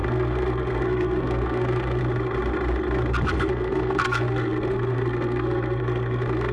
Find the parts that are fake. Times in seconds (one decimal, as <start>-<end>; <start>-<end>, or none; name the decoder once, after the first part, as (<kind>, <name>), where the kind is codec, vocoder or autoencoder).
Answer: 0.0-2.0 (codec, SNAC); 3.3-6.5